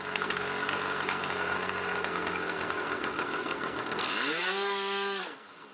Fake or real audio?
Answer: fake